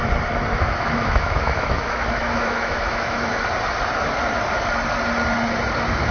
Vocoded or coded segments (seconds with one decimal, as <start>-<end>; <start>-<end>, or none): 0.5-3.4